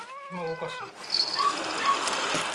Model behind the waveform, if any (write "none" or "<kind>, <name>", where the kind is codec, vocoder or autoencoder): none